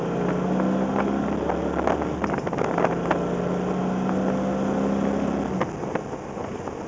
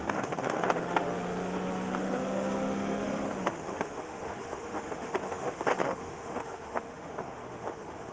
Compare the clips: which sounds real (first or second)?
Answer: first